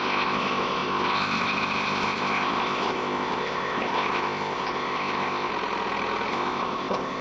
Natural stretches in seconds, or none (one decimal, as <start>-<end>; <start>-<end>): 5.5-6.3